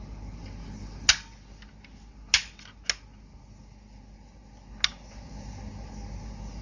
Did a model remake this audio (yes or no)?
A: no